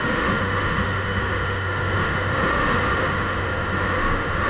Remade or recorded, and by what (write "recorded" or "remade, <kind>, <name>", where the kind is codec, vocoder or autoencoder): remade, autoencoder, DAC-VAE